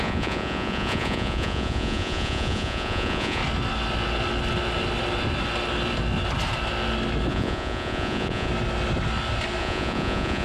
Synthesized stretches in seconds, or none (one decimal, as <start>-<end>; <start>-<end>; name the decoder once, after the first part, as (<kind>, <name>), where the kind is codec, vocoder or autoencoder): 0.0-3.4 (vocoder, Vocos); 7.3-8.5; 9.6-10.4